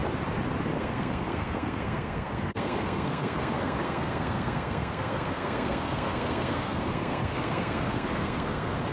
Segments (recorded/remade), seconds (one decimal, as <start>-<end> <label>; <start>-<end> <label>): 0.0-0.8 recorded; 0.8-8.9 remade